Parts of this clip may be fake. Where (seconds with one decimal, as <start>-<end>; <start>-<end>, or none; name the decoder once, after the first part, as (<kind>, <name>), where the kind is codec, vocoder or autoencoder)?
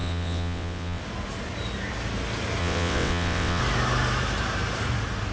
0.0-1.0 (vocoder, WaveNeXt); 2.6-3.6